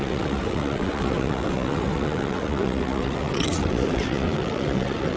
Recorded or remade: remade